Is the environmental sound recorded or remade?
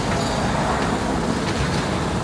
recorded